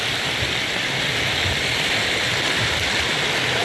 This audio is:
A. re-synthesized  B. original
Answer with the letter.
B